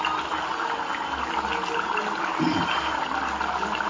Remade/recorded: recorded